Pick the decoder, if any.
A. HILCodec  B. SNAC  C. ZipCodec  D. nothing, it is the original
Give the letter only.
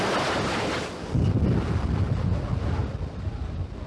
D